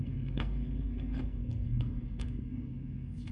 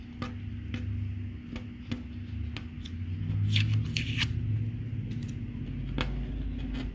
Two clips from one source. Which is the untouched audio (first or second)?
second